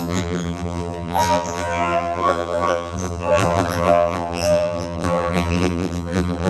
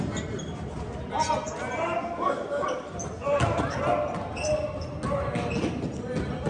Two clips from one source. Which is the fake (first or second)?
first